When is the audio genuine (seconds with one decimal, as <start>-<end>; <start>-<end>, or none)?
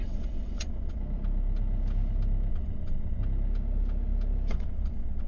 1.0-2.5; 3.2-4.5